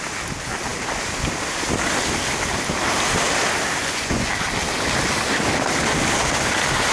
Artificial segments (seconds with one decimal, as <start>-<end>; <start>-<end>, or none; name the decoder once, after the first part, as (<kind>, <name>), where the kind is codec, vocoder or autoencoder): 3.8-4.3 (vocoder, Vocos)